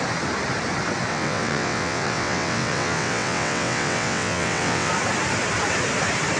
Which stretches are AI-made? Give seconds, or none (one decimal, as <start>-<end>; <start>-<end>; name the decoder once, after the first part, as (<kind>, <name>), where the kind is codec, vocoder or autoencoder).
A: 1.1-4.9 (vocoder, WaveNeXt)